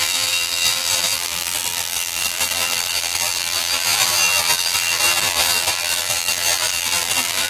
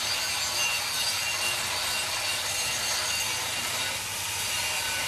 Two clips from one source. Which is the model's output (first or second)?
first